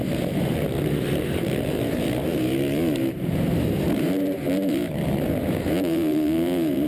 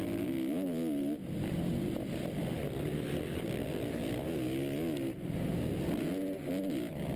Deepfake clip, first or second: first